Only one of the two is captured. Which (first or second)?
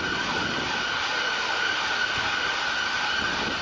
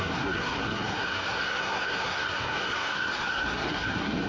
first